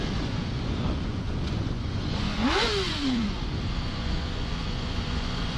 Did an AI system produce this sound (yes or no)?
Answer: yes